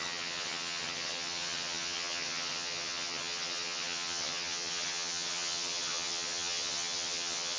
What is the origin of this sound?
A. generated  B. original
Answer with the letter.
A